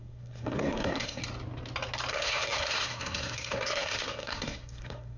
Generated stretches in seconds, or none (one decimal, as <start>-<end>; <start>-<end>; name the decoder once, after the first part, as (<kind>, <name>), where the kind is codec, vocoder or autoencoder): 0.0-1.2 (codec, SNAC); 2.1-5.2